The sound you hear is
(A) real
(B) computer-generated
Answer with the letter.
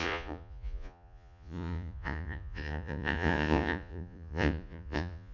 B